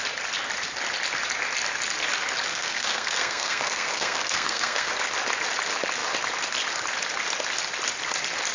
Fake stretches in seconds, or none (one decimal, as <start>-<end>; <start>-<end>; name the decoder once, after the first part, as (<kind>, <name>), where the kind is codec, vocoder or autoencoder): 2.5-4.9 (codec, SNAC)

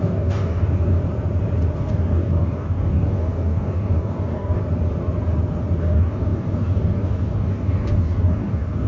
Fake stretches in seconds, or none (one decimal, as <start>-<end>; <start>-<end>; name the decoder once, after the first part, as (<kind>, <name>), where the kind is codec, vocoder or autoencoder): 0.0-1.0 (codec, DAC); 1.8-4.6; 5.8-8.9

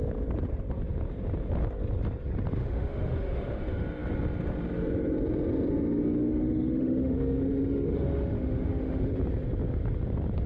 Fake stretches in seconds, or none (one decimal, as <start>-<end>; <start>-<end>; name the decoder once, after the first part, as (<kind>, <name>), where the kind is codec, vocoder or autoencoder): 2.6-3.6 (autoencoder, DAC-VAE); 6.3-9.1

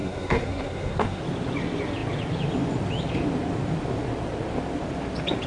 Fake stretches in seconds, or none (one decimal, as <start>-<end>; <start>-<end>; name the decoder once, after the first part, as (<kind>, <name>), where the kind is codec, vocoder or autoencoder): 0.0-1.2 (codec, SNAC)

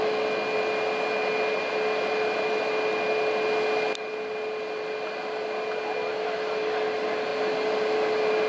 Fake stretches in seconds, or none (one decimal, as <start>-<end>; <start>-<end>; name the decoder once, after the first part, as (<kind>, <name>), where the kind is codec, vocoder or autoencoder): none